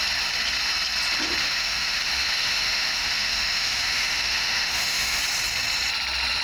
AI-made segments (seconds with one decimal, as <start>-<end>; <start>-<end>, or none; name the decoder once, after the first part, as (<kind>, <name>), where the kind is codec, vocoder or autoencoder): 1.4-5.2 (autoencoder, DAC-VAE)